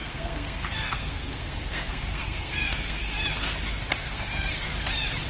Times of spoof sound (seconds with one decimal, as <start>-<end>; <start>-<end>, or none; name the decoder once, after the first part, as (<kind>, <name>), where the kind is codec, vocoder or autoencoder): 0.0-3.2 (codec, SNAC); 4.0-4.7